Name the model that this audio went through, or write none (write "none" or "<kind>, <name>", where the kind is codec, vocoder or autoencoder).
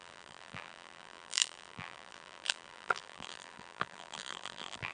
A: vocoder, BigVGAN v2